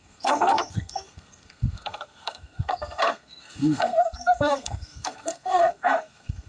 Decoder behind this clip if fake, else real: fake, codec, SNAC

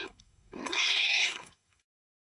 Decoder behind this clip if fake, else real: fake, codec, SNAC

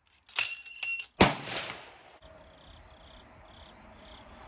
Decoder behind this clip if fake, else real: real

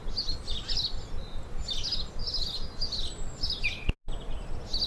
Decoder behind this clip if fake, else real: real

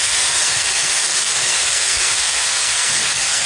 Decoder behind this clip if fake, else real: fake, codec, SNAC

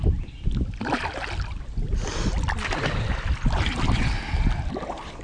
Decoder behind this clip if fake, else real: real